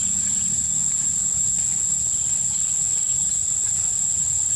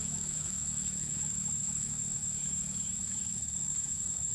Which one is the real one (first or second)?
first